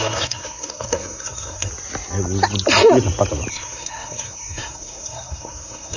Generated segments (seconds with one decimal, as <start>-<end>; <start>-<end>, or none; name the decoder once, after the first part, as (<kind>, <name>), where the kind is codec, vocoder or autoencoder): 0.0-1.7 (codec, SNAC); 3.5-6.0